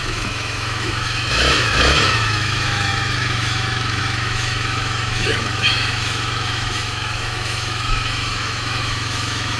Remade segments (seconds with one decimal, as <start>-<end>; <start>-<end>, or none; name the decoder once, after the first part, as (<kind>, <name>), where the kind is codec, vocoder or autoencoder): 0.0-9.6 (autoencoder, DAC-VAE)